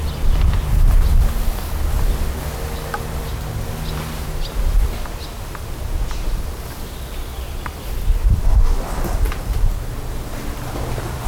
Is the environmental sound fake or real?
real